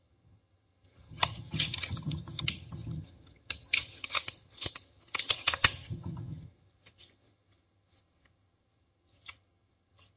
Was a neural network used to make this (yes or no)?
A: yes